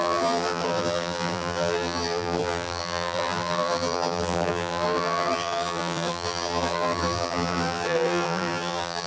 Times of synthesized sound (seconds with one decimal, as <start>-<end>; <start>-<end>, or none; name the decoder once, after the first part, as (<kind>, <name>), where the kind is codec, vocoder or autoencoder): 0.0-9.1 (vocoder, BigVGAN v2)